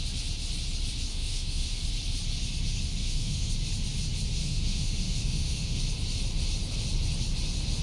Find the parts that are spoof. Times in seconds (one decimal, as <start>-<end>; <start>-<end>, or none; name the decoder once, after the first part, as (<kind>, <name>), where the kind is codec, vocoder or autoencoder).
1.1-1.8 (autoencoder, DAC-VAE); 3.0-3.5; 4.4-5.8